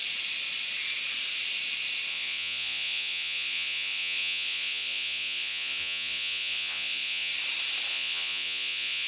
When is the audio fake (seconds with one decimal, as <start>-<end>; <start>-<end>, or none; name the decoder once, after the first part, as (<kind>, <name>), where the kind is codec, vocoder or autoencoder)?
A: 2.1-7.3 (vocoder, Vocos); 7.9-9.1